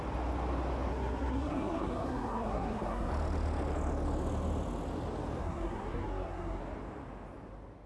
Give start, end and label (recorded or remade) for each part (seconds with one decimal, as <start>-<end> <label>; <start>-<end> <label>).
0.0-0.9 recorded; 0.9-3.1 remade; 3.1-5.4 recorded; 5.4-6.6 remade; 6.6-7.9 recorded